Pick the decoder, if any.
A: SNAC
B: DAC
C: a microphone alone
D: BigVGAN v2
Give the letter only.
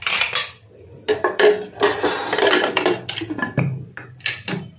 C